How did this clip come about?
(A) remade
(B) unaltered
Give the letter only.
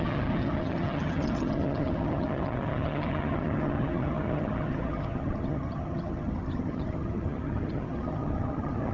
A